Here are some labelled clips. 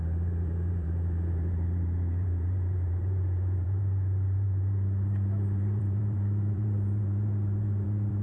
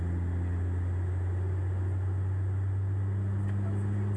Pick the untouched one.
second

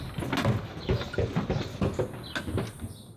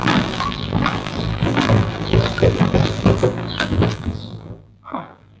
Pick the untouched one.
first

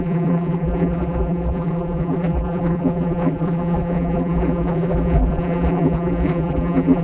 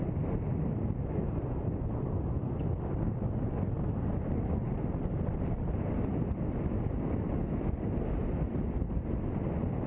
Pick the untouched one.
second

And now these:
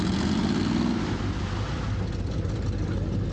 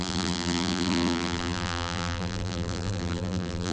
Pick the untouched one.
first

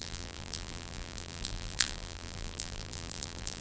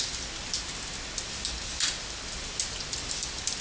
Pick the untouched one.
second